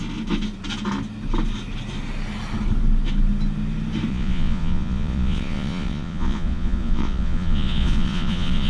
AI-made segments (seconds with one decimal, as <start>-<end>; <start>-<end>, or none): 4.1-8.7